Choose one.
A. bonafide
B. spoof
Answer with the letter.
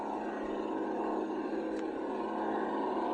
A